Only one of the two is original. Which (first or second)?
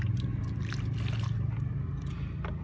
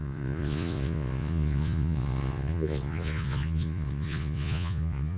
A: first